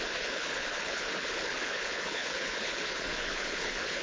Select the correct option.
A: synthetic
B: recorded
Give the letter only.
A